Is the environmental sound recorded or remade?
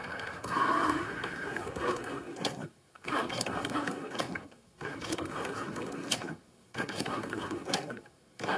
remade